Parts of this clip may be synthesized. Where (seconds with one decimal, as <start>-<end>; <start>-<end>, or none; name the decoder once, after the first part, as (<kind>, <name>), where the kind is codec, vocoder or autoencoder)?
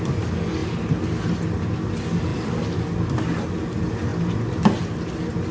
none